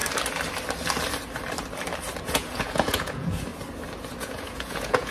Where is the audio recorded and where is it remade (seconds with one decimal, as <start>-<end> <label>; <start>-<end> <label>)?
0.0-2.2 recorded; 2.2-3.5 remade; 3.5-4.2 recorded; 4.2-5.1 remade